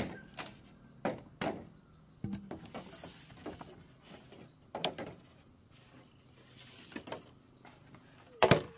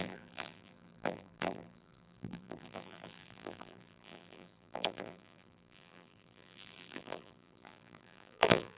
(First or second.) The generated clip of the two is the second